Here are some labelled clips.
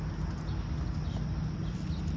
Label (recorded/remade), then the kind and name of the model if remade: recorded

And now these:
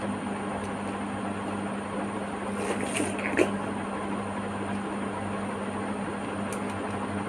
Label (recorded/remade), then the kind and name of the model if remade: recorded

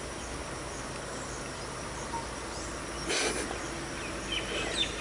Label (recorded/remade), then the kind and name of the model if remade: recorded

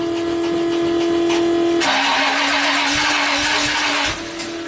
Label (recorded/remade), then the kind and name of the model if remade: recorded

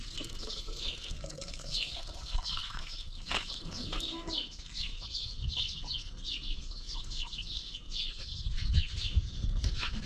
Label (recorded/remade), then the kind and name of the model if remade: remade, codec, SNAC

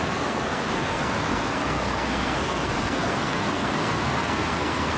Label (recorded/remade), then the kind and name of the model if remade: remade, codec, SNAC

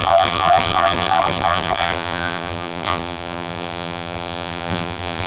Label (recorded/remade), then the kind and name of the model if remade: remade, vocoder, BigVGAN v2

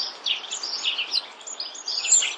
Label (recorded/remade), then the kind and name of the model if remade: recorded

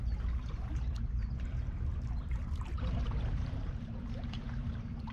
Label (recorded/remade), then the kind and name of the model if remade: remade, vocoder, BigVGAN v2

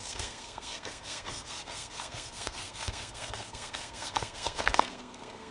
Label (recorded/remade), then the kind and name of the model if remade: remade, codec, SNAC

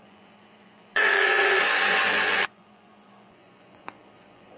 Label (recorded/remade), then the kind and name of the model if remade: remade, vocoder, Vocos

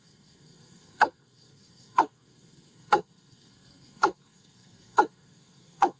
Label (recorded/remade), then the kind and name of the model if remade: remade, codec, SNAC